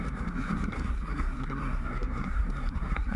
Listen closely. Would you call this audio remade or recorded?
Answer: remade